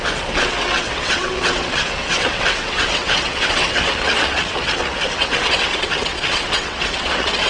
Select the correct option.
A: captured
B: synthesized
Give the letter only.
B